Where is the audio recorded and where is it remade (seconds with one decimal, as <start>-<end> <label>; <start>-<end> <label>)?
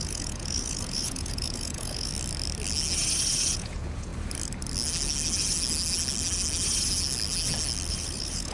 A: 0.0-2.1 remade; 2.1-3.3 recorded; 3.3-4.1 remade; 4.1-7.9 recorded; 7.9-8.5 remade